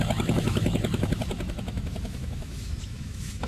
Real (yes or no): no